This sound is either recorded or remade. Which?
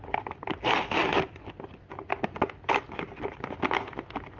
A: recorded